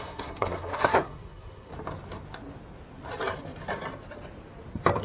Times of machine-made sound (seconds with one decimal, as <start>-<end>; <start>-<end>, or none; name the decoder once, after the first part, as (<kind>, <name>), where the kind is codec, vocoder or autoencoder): 0.0-1.7 (codec, SNAC)